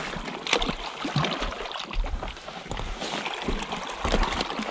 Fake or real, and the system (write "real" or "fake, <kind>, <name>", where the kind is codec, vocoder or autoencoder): real